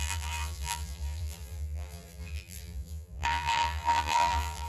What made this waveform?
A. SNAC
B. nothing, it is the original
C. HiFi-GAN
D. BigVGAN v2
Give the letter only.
D